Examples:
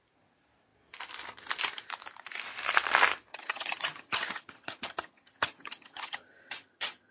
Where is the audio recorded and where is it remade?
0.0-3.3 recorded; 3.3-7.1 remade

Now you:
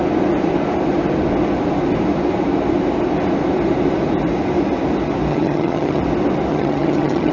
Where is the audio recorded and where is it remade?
0.0-5.3 recorded; 5.3-6.0 remade; 6.0-6.5 recorded; 6.5-7.3 remade

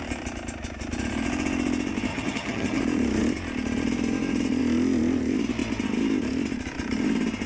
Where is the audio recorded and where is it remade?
0.0-2.1 recorded; 2.1-2.8 remade; 2.8-7.5 recorded

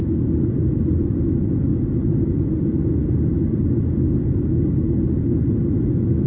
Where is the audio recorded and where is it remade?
0.0-6.3 recorded